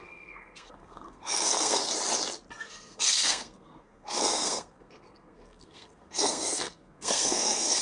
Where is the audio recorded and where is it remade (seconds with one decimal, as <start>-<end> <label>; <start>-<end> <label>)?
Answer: 0.0-1.8 remade; 1.8-2.6 recorded; 2.6-7.8 remade